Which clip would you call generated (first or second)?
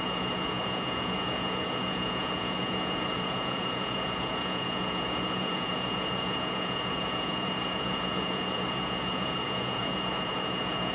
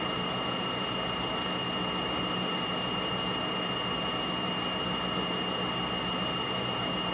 first